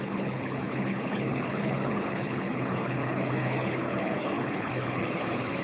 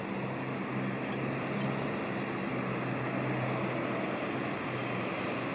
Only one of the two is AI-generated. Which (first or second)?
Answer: first